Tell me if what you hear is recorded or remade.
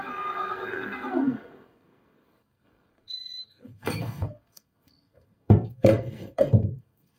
remade